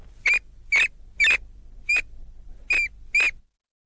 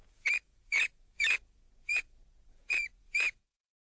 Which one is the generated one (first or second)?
second